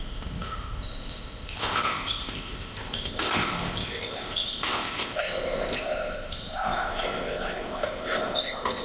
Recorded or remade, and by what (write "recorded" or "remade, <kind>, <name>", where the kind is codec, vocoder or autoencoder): remade, codec, ZipCodec